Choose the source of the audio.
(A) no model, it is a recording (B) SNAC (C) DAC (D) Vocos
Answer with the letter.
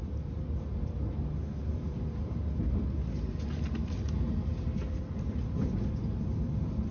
A